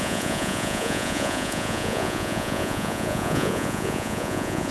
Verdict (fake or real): fake